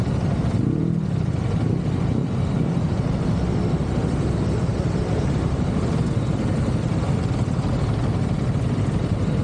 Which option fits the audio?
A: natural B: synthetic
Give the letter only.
A